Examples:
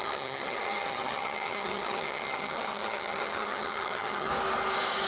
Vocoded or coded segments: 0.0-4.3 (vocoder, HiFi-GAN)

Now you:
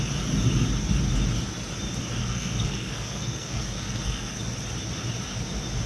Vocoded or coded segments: 2.2-4.4 (codec, SNAC)